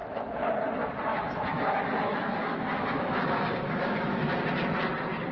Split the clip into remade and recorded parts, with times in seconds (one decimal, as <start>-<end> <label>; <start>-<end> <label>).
0.0-0.5 remade; 0.5-1.1 recorded; 1.1-4.3 remade; 4.3-5.3 recorded